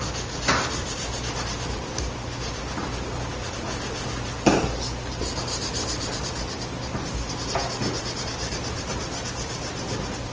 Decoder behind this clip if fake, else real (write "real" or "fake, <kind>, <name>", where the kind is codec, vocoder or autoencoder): fake, vocoder, BigVGAN v2